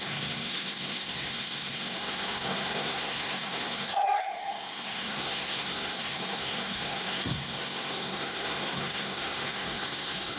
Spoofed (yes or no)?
yes